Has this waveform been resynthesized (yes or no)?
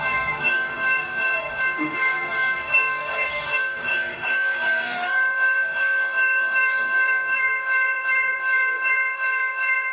yes